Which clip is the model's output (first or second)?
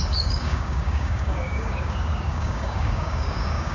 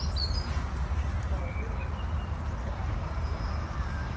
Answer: first